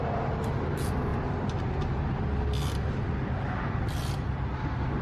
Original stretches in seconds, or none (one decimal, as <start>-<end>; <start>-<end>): 0.0-5.0